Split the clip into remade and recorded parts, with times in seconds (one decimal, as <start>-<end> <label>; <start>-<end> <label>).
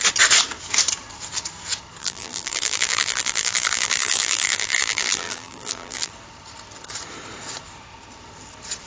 0.0-2.0 recorded; 2.0-6.1 remade; 6.1-8.9 recorded